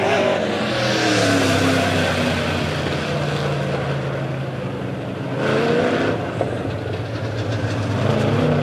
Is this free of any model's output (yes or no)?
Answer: yes